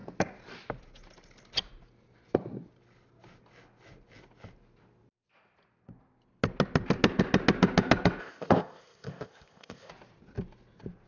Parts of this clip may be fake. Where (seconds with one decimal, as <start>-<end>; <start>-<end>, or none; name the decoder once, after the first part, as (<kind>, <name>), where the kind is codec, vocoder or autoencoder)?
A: 8.2-9.9 (codec, ZipCodec)